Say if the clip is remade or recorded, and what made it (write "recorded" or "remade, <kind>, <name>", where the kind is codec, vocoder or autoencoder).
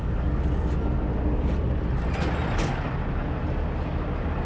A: recorded